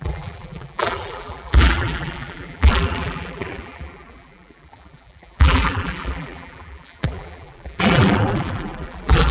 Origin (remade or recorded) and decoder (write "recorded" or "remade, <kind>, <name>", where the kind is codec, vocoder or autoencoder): remade, vocoder, BigVGAN v2